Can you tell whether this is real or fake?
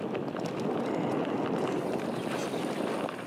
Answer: real